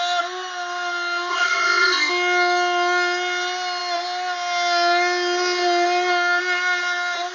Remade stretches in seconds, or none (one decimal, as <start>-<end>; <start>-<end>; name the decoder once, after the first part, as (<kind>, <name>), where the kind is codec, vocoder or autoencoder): 1.3-2.1 (codec, ZipCodec)